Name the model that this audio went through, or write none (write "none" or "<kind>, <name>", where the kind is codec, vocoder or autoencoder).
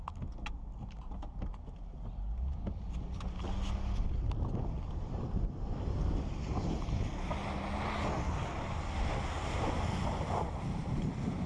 none